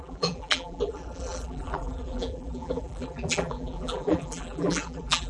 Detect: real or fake fake